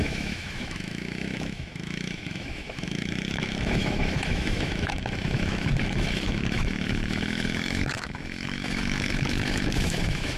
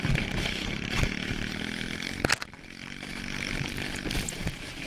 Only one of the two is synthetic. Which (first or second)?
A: first